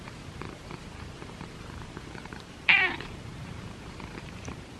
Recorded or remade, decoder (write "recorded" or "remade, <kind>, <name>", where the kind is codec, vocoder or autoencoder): remade, vocoder, BigVGAN v2